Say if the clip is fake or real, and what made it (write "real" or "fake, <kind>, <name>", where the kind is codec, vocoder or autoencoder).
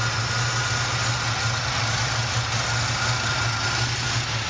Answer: real